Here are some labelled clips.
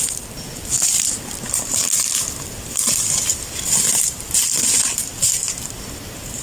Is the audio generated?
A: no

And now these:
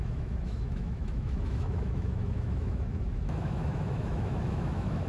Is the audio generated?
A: yes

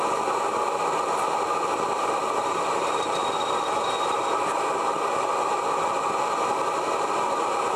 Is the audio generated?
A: no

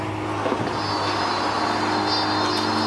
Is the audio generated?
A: no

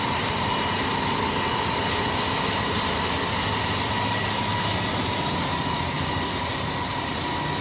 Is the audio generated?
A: no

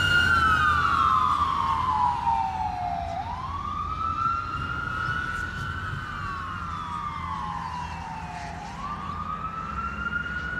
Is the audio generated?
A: no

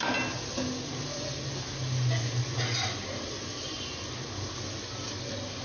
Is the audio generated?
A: no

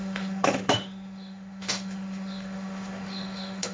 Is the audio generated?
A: yes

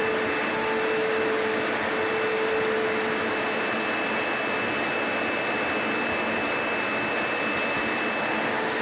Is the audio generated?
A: no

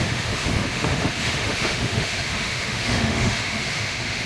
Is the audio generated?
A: yes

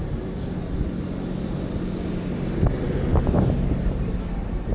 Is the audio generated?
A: no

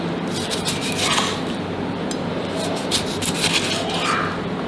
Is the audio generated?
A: no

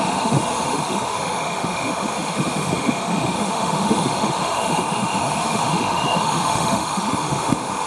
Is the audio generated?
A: yes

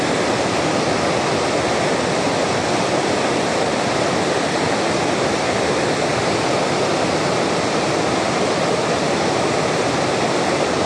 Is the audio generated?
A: no